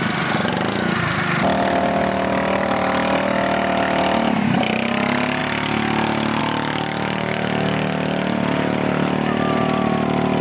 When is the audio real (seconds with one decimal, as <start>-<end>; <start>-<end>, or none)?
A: 0.0-10.4